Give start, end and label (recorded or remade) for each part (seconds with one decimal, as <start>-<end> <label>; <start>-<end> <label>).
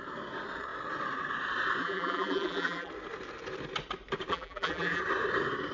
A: 0.0-1.8 recorded; 1.8-2.9 remade; 2.9-4.3 recorded; 4.3-5.0 remade; 5.0-5.7 recorded